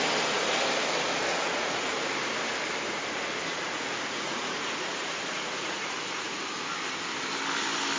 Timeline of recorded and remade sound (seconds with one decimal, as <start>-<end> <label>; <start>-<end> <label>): 0.0-1.3 recorded; 1.3-1.9 remade; 1.9-3.5 recorded; 3.5-6.4 remade; 6.4-8.0 recorded